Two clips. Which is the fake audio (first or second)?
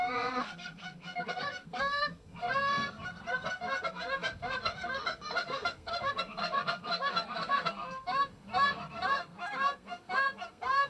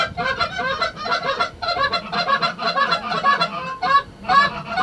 first